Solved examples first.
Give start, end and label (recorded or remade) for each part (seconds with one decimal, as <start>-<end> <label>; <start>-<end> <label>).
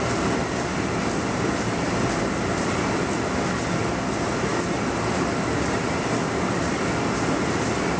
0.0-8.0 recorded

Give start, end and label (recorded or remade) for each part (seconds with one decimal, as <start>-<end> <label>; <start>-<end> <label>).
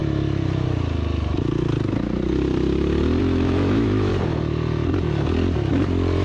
0.0-3.2 recorded; 3.2-4.1 remade; 4.1-6.2 recorded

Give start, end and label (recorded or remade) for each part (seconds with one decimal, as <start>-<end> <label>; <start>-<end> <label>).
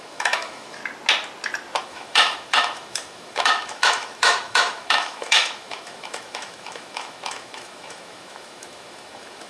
0.0-0.8 remade; 0.8-1.8 recorded; 1.8-9.5 remade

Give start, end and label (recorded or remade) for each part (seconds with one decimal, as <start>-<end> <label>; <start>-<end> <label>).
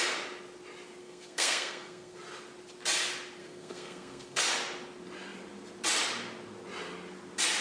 0.0-1.0 recorded; 1.0-2.2 remade; 2.2-3.4 recorded; 3.4-4.4 remade; 4.4-7.6 recorded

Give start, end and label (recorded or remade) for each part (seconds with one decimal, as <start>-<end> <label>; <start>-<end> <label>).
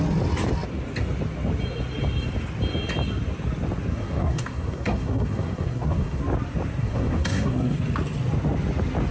0.0-3.9 recorded; 3.9-6.2 remade; 6.2-6.8 recorded; 6.8-7.8 remade; 7.8-9.1 recorded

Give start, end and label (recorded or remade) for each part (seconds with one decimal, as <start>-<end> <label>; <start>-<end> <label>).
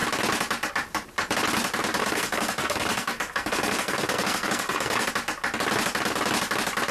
0.0-2.0 recorded; 2.0-5.1 remade; 5.1-6.9 recorded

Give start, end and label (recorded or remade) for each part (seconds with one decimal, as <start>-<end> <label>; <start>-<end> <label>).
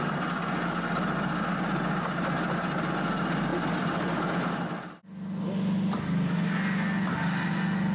0.0-7.9 recorded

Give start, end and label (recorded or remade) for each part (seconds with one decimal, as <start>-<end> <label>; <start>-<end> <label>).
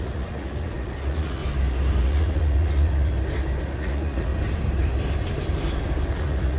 0.0-1.4 remade; 1.4-2.0 recorded; 2.0-3.1 remade; 3.1-3.6 recorded; 3.6-4.3 remade; 4.3-6.1 recorded; 6.1-6.6 remade